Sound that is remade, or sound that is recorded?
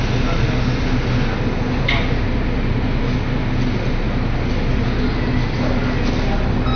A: recorded